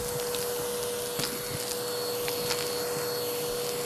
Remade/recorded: recorded